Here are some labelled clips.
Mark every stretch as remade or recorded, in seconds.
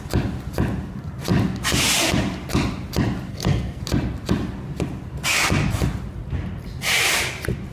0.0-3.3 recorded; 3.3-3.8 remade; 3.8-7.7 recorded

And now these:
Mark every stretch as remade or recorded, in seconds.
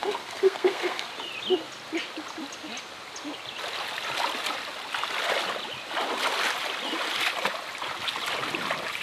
0.0-1.1 remade; 1.1-9.0 recorded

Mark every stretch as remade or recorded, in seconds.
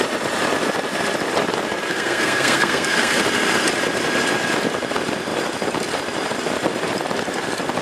0.0-1.9 recorded; 1.9-3.2 remade; 3.2-7.8 recorded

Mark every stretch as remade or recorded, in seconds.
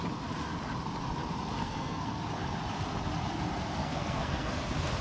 0.0-1.6 recorded; 1.6-2.2 remade; 2.2-3.8 recorded; 3.8-4.5 remade; 4.5-5.0 recorded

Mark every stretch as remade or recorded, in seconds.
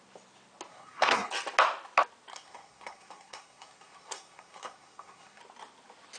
0.0-0.7 recorded; 0.7-1.3 remade; 1.3-2.3 recorded; 2.3-5.4 remade; 5.4-6.2 recorded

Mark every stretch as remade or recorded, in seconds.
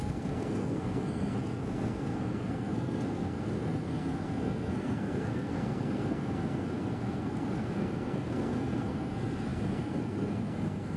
0.0-11.0 remade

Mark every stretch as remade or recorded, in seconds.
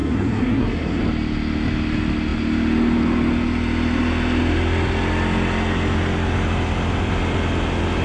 0.0-1.0 remade; 1.0-8.0 recorded